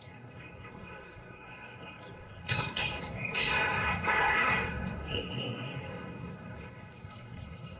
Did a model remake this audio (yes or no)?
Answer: yes